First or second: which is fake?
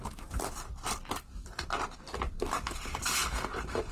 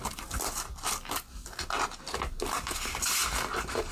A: first